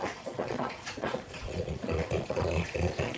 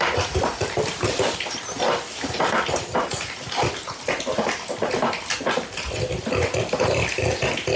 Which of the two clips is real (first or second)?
second